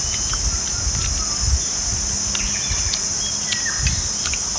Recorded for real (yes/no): yes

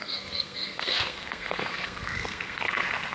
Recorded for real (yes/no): no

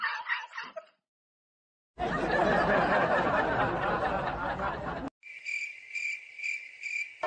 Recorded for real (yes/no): yes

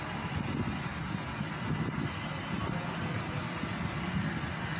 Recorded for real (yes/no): yes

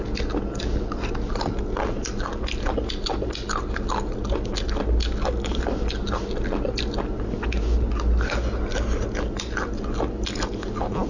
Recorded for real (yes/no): yes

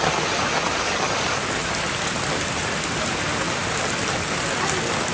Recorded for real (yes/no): yes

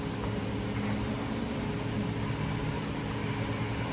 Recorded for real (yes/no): yes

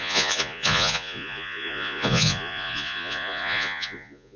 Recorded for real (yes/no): no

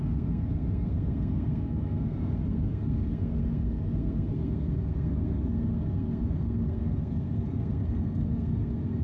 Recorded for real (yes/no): no